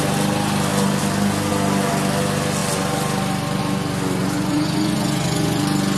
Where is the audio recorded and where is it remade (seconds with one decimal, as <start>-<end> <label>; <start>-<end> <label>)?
0.0-4.2 recorded; 4.2-5.6 remade; 5.6-6.0 recorded